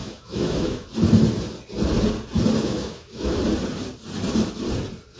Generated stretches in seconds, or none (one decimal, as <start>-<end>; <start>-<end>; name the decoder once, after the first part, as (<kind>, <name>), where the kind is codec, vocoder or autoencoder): 0.0-0.9 (autoencoder, DAC-VAE); 2.6-3.4

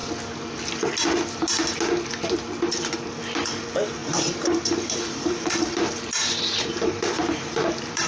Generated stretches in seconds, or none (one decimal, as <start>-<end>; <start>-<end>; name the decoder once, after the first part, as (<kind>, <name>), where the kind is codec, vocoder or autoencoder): 4.0-8.1 (vocoder, BigVGAN v2)

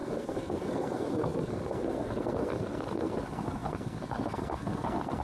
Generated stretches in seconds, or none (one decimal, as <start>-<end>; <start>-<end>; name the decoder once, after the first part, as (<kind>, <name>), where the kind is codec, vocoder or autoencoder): 0.0-5.2 (codec, SNAC)

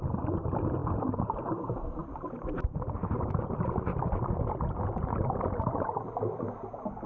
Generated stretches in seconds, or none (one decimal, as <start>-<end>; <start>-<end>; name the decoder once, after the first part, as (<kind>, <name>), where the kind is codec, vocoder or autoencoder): none

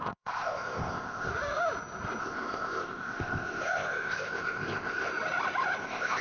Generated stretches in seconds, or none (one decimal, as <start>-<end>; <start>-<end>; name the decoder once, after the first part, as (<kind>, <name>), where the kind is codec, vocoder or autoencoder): 0.0-1.3 (codec, ZipCodec); 2.2-5.1; 5.8-6.2

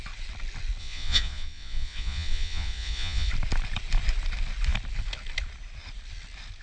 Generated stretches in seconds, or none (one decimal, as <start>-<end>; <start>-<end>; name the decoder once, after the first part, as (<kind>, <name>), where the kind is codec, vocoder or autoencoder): 0.8-3.3 (vocoder, Vocos)

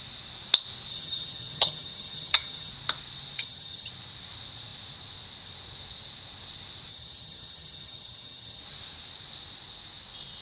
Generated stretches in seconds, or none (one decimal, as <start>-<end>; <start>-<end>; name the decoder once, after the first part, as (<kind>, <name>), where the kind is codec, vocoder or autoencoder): 0.9-2.7 (vocoder, HiFi-GAN); 3.4-3.9; 6.9-8.6